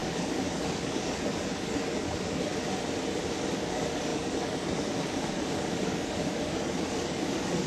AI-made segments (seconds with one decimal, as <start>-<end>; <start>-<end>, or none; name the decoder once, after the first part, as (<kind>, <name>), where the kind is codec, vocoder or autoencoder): 0.0-2.5 (codec, DAC); 3.4-7.7